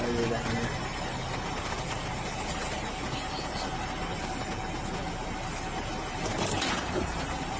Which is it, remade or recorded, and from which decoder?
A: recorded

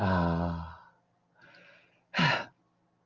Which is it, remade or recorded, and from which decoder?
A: recorded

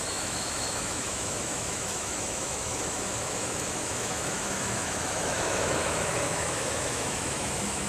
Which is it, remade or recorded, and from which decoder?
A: remade, autoencoder, DAC-VAE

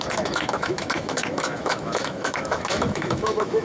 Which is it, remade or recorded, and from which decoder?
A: remade, autoencoder, DAC-VAE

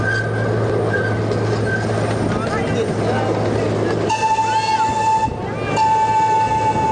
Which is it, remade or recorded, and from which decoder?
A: recorded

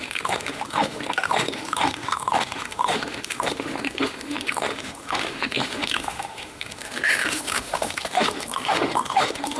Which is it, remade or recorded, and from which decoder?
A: remade, autoencoder, DAC-VAE